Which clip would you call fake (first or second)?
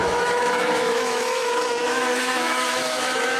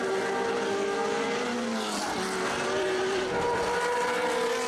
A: first